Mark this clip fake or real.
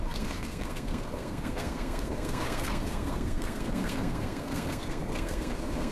fake